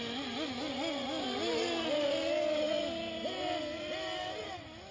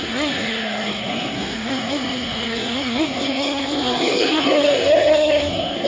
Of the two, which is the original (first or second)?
first